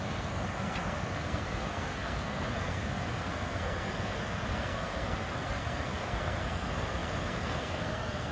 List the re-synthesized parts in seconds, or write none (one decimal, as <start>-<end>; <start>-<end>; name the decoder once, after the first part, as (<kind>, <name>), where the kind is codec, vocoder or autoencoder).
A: 0.0-8.3 (codec, SNAC)